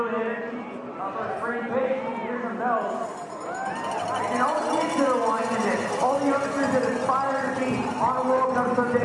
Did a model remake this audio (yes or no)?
no